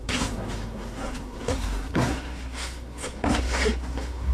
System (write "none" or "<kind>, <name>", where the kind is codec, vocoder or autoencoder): codec, SNAC